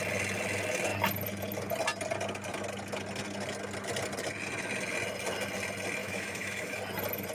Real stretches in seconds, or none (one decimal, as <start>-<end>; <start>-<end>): 0.0-6.0; 6.8-7.3